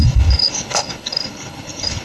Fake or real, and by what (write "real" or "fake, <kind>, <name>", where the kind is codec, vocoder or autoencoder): fake, codec, HILCodec